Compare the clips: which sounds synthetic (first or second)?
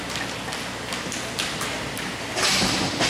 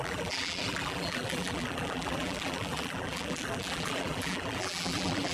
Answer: second